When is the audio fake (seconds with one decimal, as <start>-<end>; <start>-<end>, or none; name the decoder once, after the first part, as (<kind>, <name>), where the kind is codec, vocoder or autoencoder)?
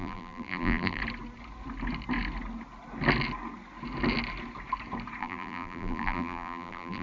0.0-1.0 (vocoder, BigVGAN v2); 5.2-7.0